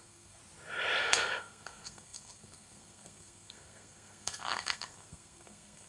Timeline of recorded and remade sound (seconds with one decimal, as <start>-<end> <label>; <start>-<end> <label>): 0.0-0.4 remade; 0.4-1.0 recorded; 1.0-5.9 remade